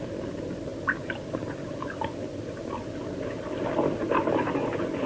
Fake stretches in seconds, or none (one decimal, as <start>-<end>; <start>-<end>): none